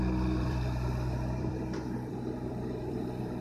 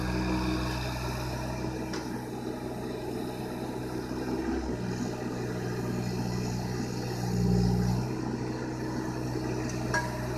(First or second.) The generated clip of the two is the first